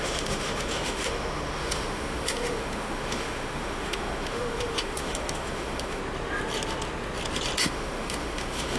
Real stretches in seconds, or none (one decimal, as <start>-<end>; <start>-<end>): 6.0-7.6